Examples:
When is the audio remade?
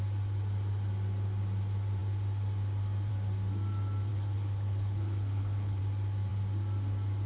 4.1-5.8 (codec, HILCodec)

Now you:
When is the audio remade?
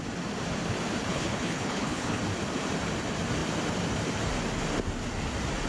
1.1-2.2 (codec, HILCodec)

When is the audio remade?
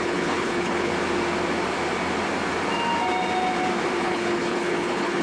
0.0-0.9 (codec, HILCodec); 4.0-5.2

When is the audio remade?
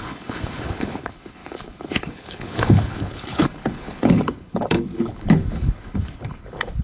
0.0-6.8 (codec, HILCodec)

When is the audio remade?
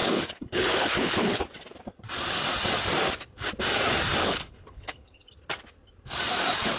0.0-1.4 (codec, HILCodec); 4.2-5.3